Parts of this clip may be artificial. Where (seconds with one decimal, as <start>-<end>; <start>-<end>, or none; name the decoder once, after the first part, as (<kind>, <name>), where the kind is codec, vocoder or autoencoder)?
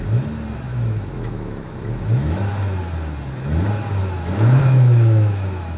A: 0.7-2.5 (autoencoder, DAC-VAE); 4.0-5.8